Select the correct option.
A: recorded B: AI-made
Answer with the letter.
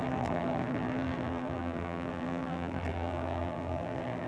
B